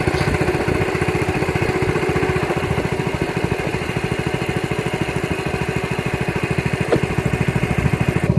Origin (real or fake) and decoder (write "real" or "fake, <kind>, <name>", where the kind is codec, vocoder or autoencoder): real